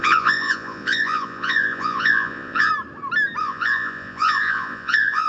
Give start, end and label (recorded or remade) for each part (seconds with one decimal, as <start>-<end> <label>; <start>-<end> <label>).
0.0-2.7 remade; 2.7-3.4 recorded; 3.4-5.3 remade